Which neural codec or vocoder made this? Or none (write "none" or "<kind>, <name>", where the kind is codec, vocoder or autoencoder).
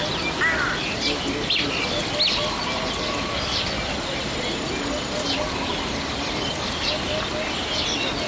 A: none